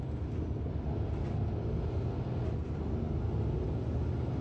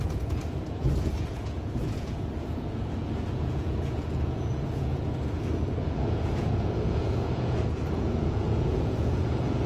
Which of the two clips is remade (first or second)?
second